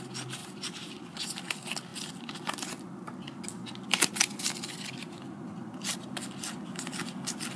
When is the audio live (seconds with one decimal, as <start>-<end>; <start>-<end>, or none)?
0.0-0.4; 0.9-7.6